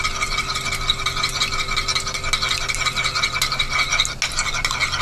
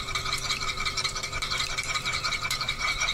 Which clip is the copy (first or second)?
second